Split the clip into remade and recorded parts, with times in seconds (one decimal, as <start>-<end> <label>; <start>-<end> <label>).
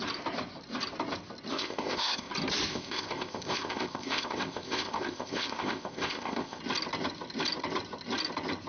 0.0-1.5 recorded; 1.5-2.3 remade; 2.3-2.7 recorded; 2.7-6.6 remade; 6.6-8.7 recorded